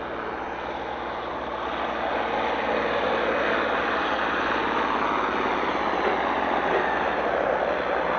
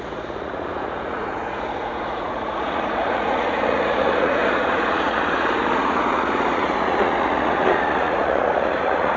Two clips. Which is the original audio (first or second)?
first